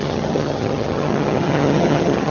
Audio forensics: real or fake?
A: fake